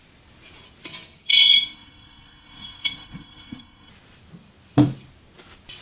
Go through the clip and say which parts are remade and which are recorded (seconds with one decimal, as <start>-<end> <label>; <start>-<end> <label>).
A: 0.0-1.3 recorded; 1.3-3.9 remade; 3.9-5.8 recorded